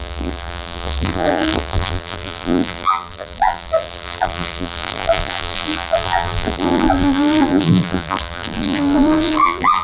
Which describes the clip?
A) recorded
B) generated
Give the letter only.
B